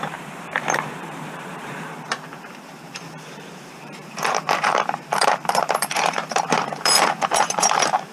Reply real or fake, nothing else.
fake